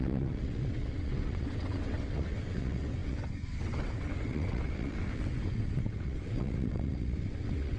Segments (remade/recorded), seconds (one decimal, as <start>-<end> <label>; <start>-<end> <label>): 0.0-7.8 remade